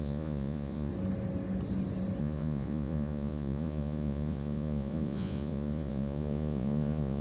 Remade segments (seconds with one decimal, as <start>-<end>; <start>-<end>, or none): 0.0-0.9; 2.2-7.2